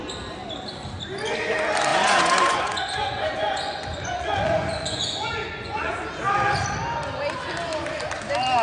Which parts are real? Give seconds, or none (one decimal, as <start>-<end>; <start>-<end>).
0.0-1.9; 5.9-8.6